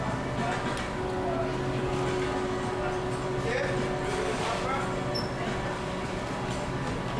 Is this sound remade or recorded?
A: recorded